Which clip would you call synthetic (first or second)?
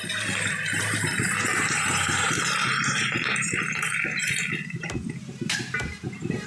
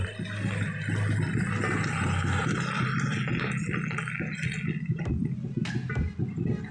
first